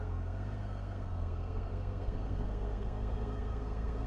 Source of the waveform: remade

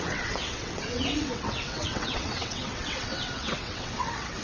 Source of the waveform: remade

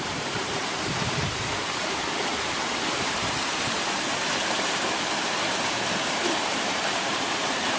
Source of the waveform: remade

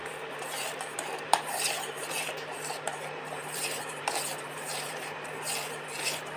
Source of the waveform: remade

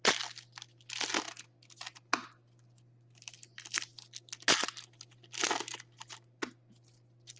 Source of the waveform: recorded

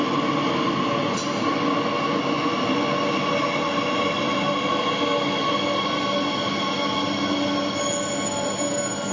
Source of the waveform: recorded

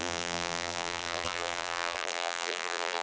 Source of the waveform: remade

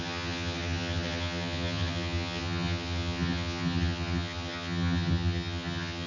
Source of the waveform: remade